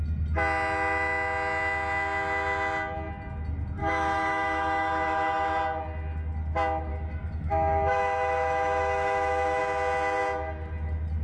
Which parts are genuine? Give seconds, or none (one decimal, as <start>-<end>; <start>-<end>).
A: 0.0-3.8; 5.6-6.9; 9.6-11.2